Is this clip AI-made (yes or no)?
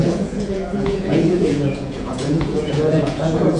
yes